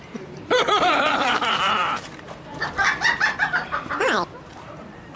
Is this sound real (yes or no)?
no